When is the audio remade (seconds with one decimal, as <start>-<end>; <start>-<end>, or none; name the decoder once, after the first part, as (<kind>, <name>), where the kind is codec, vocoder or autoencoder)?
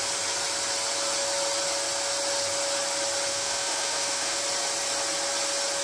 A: 3.3-4.4 (autoencoder, DAC-VAE)